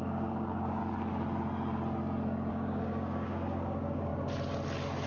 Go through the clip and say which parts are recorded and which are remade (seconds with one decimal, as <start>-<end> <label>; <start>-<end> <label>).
0.0-0.8 remade; 0.8-2.5 recorded; 2.5-4.1 remade; 4.1-5.1 recorded